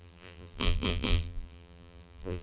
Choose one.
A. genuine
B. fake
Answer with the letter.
B